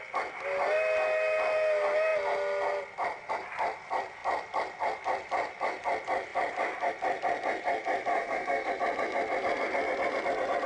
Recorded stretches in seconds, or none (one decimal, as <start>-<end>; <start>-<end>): 0.0-8.1; 8.7-10.7